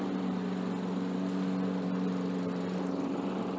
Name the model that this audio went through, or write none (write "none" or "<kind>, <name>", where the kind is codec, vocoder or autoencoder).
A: none